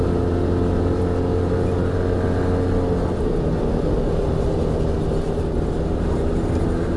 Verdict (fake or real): real